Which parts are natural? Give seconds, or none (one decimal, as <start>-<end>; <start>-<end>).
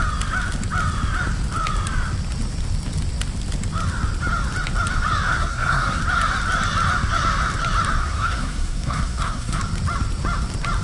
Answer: 0.0-5.3; 6.0-8.0; 9.6-10.8